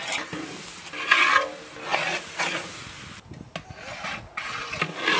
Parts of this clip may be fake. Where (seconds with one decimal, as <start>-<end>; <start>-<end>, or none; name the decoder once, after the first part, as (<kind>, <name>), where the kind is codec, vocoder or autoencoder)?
1.9-2.9 (vocoder, Vocos); 3.9-4.7